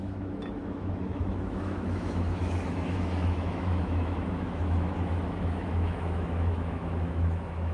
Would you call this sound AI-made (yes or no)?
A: yes